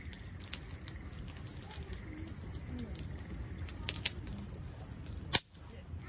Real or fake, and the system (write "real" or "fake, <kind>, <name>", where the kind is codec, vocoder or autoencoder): real